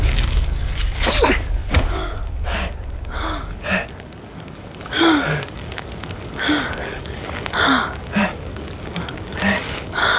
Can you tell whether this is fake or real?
fake